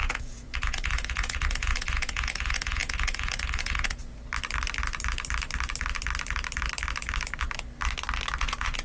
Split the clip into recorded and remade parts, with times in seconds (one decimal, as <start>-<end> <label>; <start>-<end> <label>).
0.0-4.0 remade; 4.0-8.4 recorded; 8.4-8.8 remade